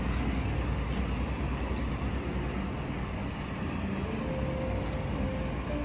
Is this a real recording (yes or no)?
yes